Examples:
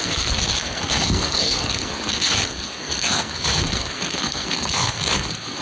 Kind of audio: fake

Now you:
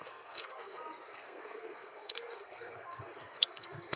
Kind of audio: fake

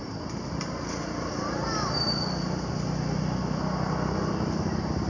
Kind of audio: real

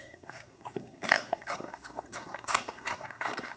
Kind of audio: fake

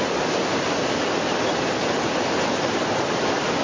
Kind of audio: real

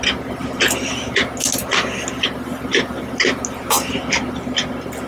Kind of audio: real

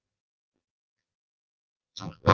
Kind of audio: fake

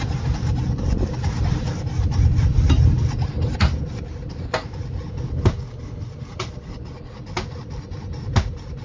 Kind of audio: real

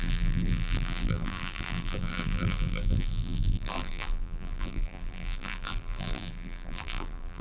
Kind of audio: fake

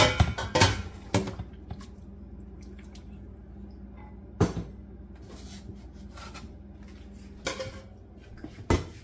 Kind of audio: real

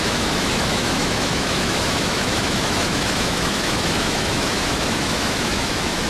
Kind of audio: fake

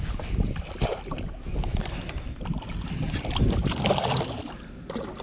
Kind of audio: real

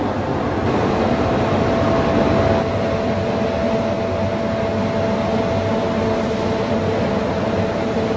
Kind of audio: real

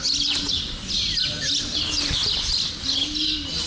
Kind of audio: real